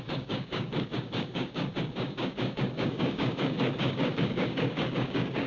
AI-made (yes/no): yes